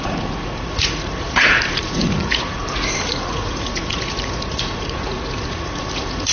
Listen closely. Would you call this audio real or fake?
fake